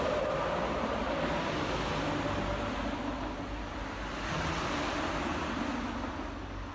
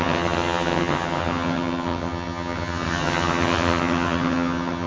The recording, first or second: first